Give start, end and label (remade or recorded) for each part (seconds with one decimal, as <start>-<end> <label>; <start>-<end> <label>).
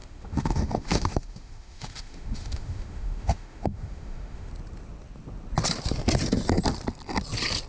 0.0-4.5 remade; 4.5-7.7 recorded